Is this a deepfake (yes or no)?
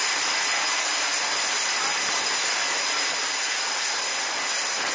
no